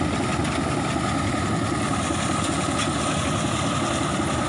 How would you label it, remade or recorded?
recorded